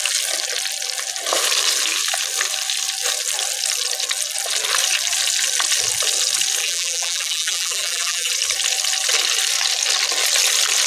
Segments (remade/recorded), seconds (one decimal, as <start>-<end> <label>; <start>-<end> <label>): 0.0-6.6 recorded; 6.6-8.3 remade; 8.3-10.9 recorded